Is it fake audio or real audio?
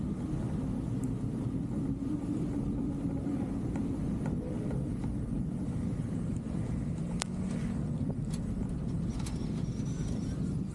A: real